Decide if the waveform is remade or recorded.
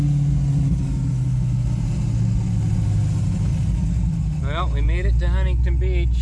recorded